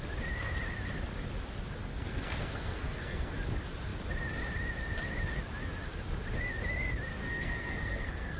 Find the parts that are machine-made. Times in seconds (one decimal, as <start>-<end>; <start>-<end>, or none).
1.9-3.4; 7.2-8.4

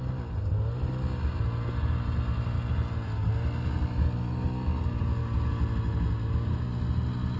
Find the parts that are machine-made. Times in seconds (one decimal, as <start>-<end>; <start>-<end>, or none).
none

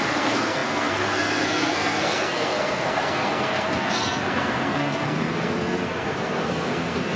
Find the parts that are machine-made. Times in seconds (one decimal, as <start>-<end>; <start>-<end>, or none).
0.0-7.2